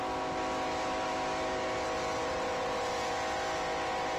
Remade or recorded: recorded